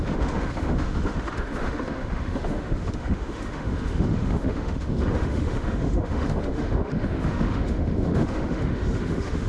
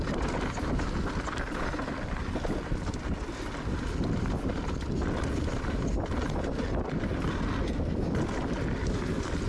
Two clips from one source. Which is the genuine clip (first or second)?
second